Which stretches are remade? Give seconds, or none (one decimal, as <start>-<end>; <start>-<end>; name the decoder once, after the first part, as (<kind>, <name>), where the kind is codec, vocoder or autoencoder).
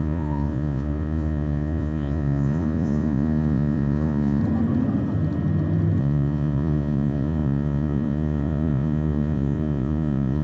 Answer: 0.0-4.4 (vocoder, Vocos); 6.0-10.4